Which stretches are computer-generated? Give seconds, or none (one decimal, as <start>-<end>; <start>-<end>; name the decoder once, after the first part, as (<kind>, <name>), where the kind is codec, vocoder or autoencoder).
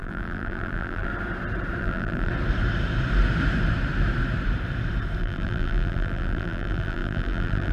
0.0-1.1 (vocoder, BigVGAN v2); 1.8-2.3; 5.2-7.7